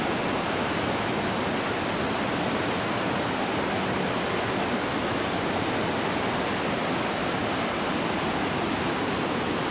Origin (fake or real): real